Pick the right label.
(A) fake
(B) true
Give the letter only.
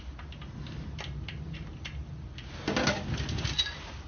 B